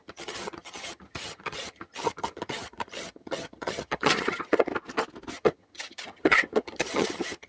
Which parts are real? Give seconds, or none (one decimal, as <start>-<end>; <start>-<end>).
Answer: 4.7-5.3